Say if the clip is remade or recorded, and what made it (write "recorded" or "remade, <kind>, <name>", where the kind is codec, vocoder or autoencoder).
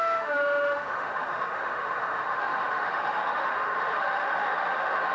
remade, autoencoder, DAC-VAE